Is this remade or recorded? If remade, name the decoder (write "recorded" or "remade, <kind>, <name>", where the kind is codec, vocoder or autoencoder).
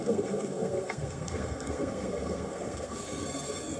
remade, codec, SNAC